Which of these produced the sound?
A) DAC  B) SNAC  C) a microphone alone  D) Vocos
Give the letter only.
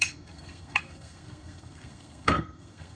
B